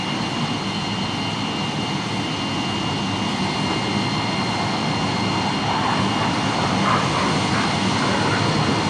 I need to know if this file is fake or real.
real